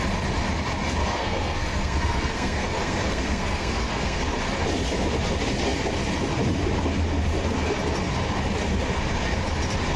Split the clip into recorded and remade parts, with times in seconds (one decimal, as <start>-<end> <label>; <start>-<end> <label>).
0.0-1.0 recorded; 1.0-4.2 remade; 4.2-10.0 recorded